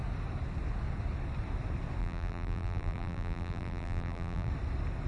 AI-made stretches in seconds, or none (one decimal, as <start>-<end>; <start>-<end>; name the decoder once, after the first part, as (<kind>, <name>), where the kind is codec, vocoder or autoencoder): 2.0-4.5 (vocoder, BigVGAN v2)